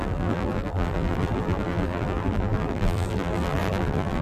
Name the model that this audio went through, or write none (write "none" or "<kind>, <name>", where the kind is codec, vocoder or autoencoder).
vocoder, BigVGAN v2